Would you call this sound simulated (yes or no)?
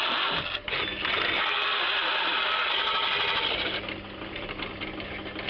no